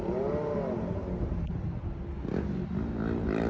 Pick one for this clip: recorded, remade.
recorded